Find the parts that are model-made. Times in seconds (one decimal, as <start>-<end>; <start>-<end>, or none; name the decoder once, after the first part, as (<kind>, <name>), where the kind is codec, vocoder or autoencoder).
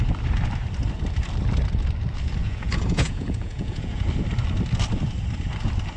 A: 2.4-4.1 (vocoder, Vocos)